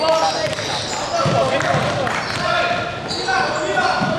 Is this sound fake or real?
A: real